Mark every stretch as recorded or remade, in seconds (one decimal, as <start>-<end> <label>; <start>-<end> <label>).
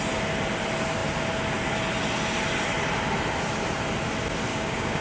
0.0-4.5 recorded; 4.5-5.0 remade